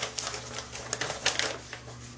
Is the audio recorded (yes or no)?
yes